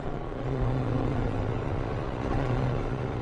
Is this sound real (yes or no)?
no